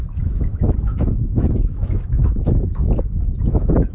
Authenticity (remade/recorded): remade